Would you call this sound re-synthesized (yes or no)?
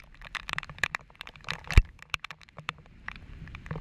yes